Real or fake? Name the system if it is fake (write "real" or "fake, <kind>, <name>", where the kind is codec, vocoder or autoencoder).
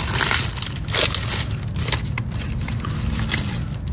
real